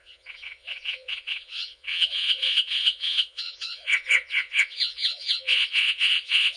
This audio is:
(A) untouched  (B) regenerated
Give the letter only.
B